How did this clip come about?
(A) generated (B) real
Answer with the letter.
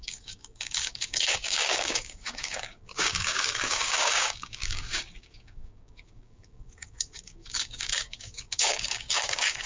A